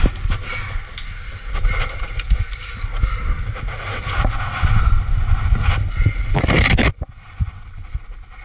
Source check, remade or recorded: recorded